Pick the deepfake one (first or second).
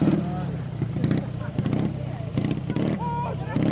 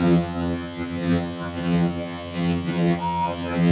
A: second